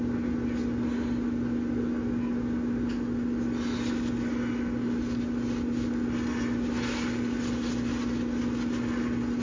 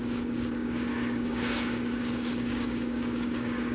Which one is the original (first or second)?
first